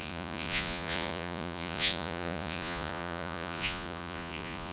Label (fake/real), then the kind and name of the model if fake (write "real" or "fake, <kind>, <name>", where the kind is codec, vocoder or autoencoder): fake, vocoder, Vocos